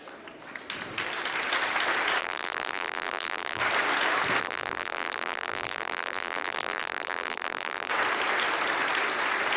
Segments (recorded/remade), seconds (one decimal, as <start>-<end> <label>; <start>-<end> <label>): 0.0-2.2 recorded; 2.2-3.6 remade; 3.6-4.4 recorded; 4.4-7.9 remade; 7.9-9.6 recorded